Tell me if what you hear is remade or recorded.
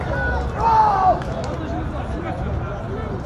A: recorded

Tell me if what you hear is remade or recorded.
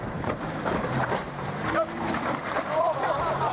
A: remade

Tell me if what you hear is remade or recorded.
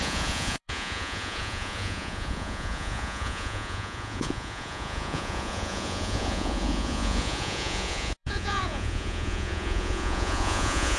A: remade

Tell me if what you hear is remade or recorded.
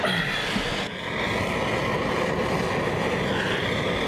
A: recorded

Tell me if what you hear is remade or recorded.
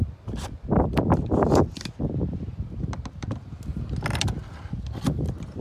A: recorded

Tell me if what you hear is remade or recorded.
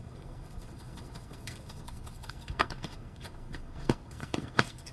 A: remade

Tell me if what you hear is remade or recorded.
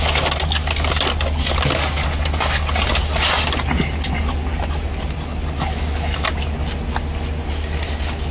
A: recorded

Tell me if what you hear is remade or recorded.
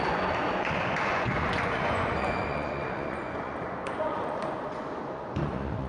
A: remade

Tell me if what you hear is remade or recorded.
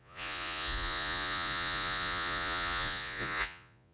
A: remade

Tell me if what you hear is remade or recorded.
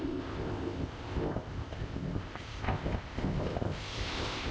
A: remade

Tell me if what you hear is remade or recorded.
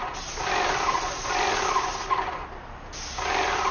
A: recorded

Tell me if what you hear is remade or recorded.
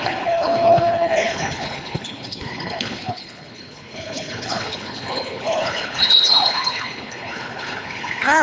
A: remade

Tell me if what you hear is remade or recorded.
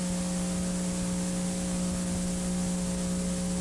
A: recorded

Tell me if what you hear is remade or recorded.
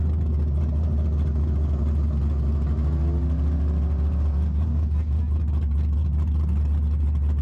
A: recorded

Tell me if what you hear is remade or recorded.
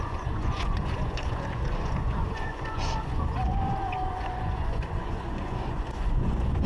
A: remade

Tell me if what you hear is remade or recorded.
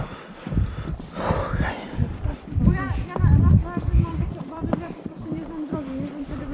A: remade